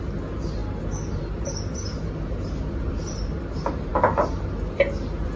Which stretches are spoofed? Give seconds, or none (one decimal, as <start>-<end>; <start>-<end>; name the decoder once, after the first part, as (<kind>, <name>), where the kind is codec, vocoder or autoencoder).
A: none